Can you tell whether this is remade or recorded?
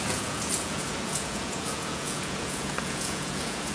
remade